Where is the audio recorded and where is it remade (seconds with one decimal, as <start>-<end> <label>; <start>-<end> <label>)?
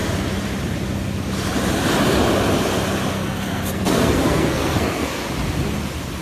0.0-3.1 recorded; 3.1-5.2 remade; 5.2-6.2 recorded